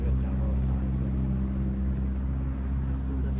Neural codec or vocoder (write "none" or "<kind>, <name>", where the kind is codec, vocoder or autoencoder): none